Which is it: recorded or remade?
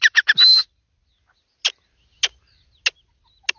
recorded